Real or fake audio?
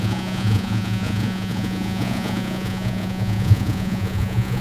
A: fake